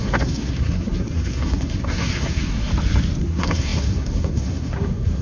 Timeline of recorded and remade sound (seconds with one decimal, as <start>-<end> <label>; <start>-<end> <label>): 0.0-2.7 remade; 2.7-3.2 recorded; 3.2-5.2 remade